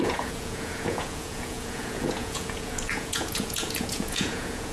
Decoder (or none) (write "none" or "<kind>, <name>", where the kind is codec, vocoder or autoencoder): vocoder, Vocos